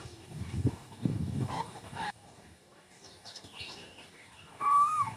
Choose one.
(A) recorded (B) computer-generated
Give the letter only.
B